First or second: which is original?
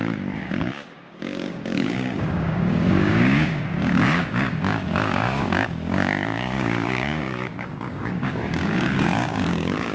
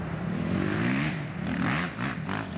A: second